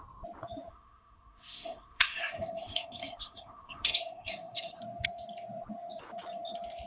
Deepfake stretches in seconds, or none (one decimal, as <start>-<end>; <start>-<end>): 0.7-4.8